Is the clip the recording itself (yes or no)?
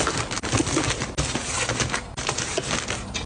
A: yes